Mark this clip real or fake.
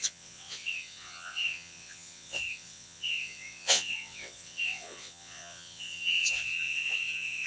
fake